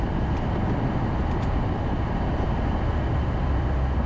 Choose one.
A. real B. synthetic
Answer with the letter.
A